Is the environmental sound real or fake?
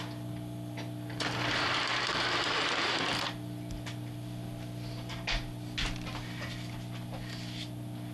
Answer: real